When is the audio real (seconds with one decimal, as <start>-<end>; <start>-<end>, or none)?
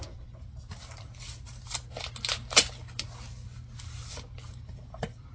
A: 1.5-4.1